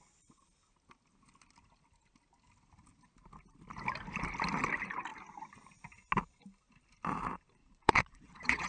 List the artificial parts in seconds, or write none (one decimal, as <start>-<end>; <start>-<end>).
7.6-8.7